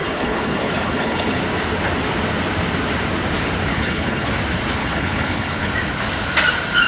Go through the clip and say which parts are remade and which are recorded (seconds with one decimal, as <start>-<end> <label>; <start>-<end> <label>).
0.0-1.4 remade; 1.4-3.7 recorded; 3.7-4.3 remade; 4.3-4.8 recorded; 4.8-5.7 remade; 5.7-6.9 recorded